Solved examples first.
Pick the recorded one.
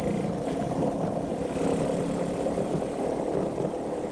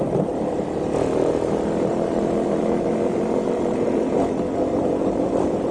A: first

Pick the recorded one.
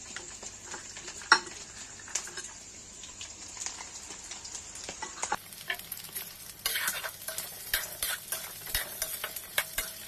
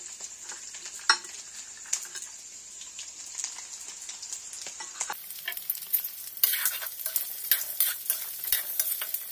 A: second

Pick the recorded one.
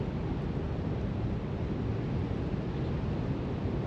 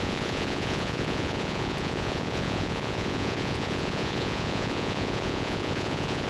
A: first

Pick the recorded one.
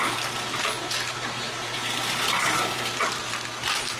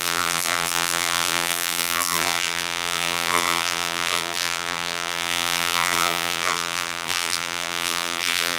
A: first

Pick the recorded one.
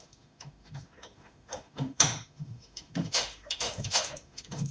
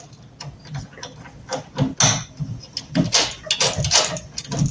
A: second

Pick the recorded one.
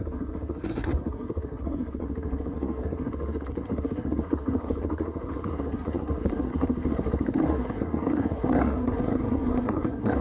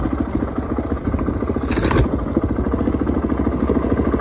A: second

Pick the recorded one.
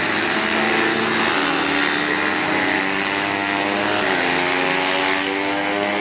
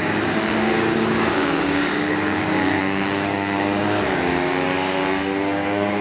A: first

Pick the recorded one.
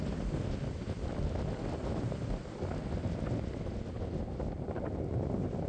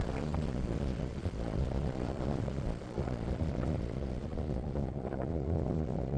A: first